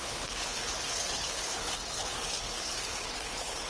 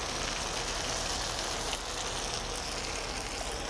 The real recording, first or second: second